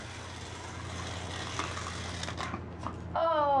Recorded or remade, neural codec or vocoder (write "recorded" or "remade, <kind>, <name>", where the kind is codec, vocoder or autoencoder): recorded